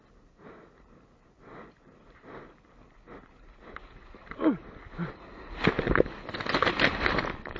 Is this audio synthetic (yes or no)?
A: no